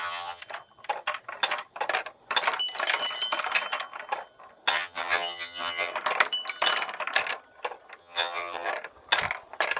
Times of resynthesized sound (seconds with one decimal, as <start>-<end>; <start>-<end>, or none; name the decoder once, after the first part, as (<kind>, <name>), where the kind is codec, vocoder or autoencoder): 0.0-0.4 (vocoder, HiFi-GAN); 4.7-5.9; 8.0-8.7